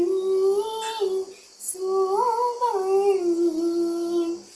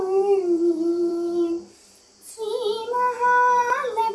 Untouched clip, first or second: first